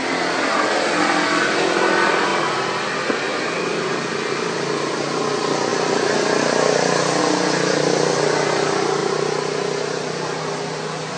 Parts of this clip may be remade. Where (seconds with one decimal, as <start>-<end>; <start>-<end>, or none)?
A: none